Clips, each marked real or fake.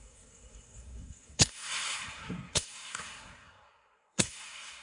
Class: fake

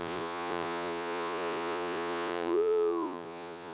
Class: fake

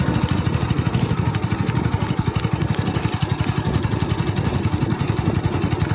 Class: real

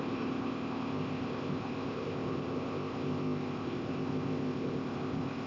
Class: fake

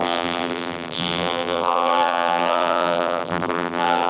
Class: fake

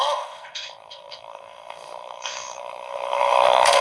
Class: fake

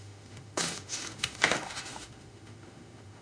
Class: fake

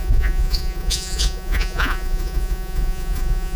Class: fake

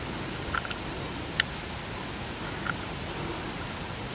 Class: real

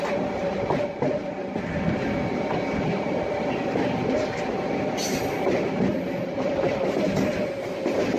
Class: real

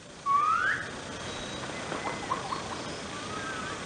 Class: real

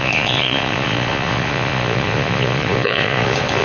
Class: fake